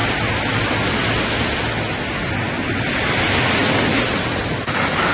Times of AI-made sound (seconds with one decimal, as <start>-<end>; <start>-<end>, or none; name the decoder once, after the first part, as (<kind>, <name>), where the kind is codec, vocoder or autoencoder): none